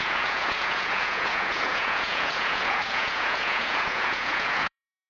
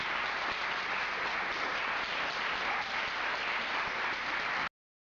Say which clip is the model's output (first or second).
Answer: first